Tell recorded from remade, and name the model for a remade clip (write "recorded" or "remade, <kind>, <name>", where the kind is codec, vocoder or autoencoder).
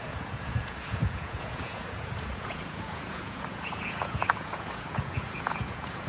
remade, vocoder, Vocos